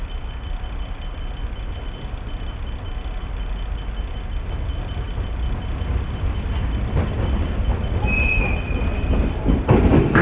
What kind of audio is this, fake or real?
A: real